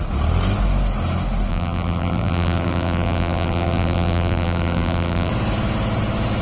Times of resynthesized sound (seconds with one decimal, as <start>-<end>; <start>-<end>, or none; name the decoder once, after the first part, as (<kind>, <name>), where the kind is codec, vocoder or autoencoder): 1.5-5.3 (vocoder, BigVGAN v2)